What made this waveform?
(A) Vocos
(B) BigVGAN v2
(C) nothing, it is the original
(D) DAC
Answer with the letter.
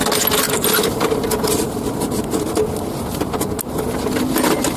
C